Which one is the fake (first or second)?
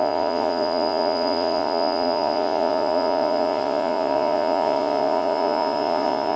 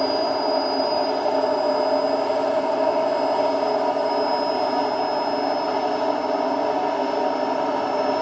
first